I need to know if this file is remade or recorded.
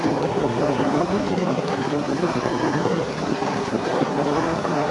remade